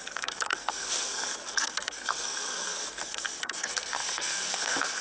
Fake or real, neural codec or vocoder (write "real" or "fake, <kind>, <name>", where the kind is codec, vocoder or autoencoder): fake, codec, SNAC